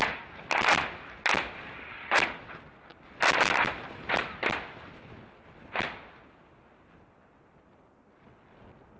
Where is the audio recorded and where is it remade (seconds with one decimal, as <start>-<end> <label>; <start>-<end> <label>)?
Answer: 0.0-9.0 recorded